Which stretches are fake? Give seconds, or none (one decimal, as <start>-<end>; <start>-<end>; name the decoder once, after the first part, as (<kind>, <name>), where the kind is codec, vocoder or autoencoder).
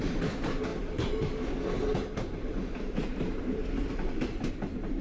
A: none